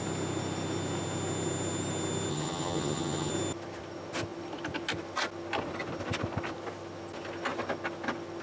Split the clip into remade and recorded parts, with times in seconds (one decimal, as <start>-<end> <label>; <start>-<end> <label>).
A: 0.0-2.3 recorded; 2.3-3.3 remade; 3.3-8.4 recorded